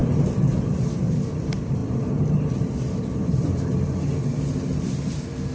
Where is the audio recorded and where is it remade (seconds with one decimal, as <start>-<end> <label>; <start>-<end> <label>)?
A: 0.0-5.5 remade